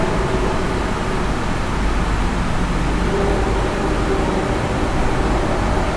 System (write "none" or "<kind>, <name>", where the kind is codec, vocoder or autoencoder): none